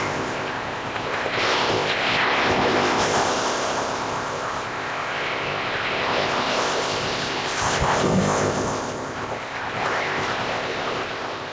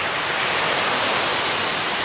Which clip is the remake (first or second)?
first